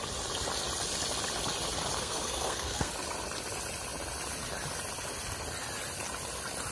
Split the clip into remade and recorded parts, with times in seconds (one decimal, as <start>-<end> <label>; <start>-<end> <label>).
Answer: 0.0-2.0 recorded; 2.0-2.9 remade; 2.9-6.7 recorded